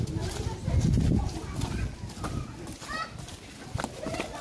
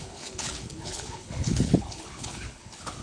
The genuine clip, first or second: first